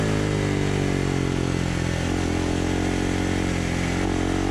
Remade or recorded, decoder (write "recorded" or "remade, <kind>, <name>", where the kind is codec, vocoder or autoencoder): recorded